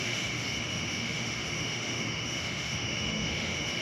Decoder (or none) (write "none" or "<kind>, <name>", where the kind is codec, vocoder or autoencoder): autoencoder, DAC-VAE